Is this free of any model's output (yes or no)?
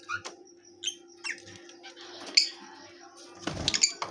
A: yes